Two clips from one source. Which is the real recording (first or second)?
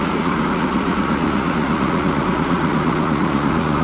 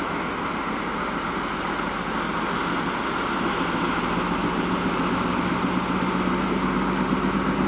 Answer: second